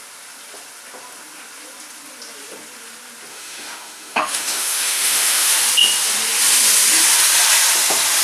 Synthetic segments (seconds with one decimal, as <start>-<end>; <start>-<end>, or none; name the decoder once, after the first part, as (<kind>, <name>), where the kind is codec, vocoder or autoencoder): 3.3-5.5 (autoencoder, DAC-VAE)